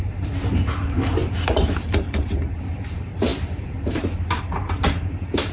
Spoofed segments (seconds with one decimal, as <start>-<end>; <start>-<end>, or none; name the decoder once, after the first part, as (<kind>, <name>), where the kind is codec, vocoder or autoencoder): 0.0-5.5 (vocoder, BigVGAN v2)